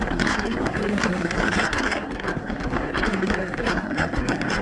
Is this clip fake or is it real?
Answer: fake